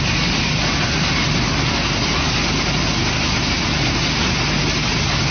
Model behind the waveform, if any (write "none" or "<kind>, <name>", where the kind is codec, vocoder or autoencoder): none